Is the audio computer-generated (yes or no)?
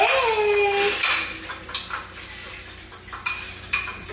no